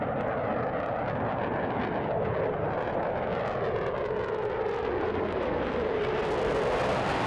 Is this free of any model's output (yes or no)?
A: yes